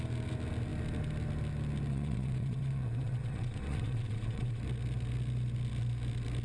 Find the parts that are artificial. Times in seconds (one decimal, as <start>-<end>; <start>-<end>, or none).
1.9-4.6